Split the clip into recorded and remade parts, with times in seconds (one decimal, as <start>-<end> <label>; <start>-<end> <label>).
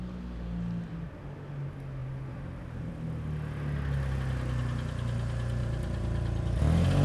0.0-2.0 recorded; 2.0-2.9 remade; 2.9-5.6 recorded; 5.6-6.6 remade; 6.6-7.0 recorded